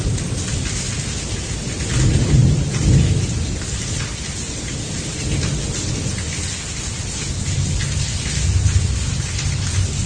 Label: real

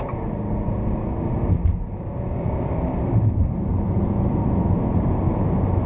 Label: real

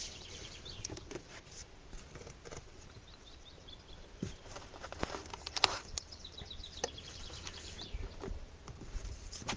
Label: fake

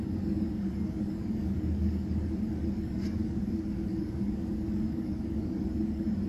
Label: fake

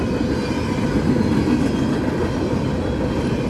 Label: real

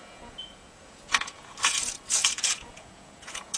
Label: fake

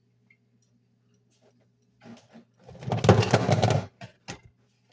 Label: real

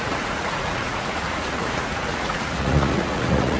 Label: fake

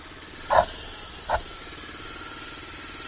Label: real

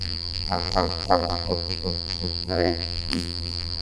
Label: fake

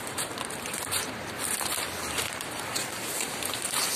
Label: fake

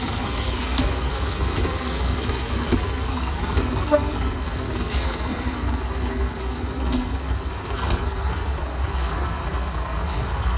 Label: fake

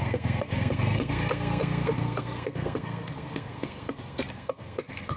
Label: fake